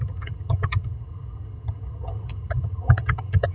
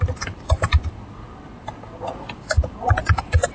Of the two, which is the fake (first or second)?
first